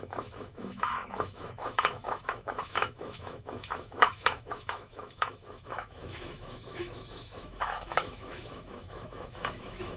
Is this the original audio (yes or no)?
no